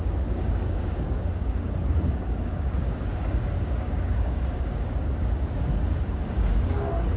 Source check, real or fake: fake